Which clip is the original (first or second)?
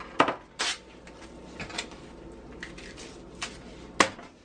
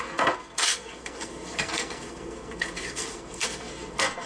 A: first